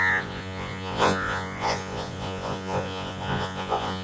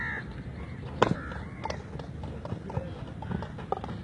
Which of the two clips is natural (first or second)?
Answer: second